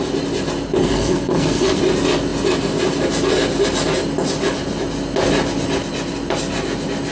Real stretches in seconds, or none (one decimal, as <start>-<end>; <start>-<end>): 0.0-0.8; 1.8-7.1